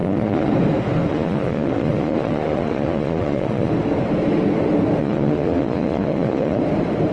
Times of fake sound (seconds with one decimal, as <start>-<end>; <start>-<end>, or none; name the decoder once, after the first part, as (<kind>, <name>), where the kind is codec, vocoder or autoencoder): 0.0-0.5 (vocoder, Vocos); 1.1-3.7; 5.0-6.6